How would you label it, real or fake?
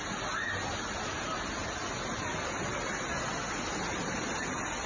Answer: real